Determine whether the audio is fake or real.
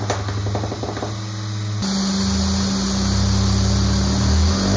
real